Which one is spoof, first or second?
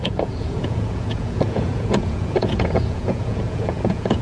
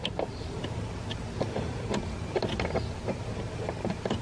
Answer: first